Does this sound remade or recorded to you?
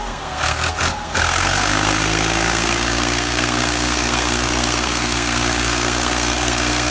remade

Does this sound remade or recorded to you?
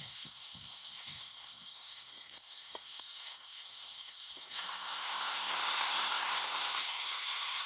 remade